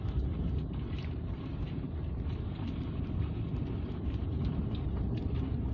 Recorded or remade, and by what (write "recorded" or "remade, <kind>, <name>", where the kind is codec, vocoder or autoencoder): remade, vocoder, BigVGAN v2